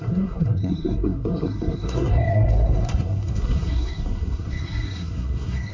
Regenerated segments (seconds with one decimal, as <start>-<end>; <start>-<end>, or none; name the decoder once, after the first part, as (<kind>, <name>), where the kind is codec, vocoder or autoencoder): 0.0-5.7 (codec, SNAC)